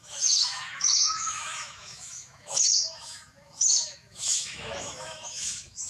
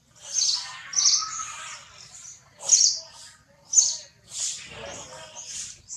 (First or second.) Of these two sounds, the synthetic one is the first